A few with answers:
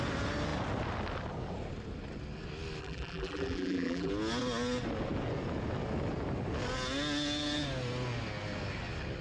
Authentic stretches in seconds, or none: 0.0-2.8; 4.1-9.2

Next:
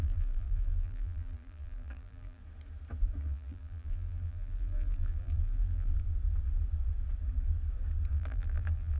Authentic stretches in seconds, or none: 2.4-3.2; 5.9-8.1

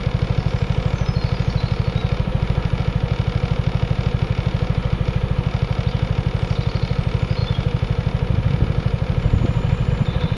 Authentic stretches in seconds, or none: 0.0-2.0; 2.8-10.4

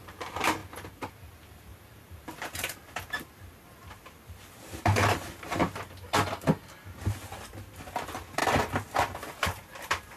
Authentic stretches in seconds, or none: 0.6-1.1; 5.6-8.0; 8.4-9.4

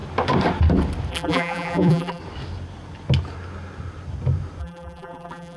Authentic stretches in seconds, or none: 0.0-1.1; 2.2-4.6